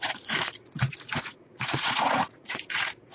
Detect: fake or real fake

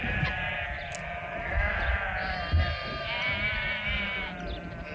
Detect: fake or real real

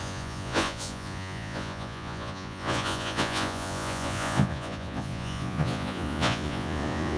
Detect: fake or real fake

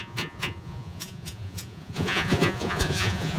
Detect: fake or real fake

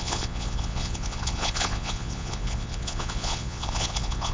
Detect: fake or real fake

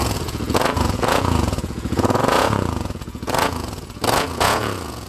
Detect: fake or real fake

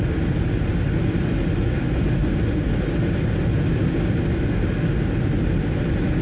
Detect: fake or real real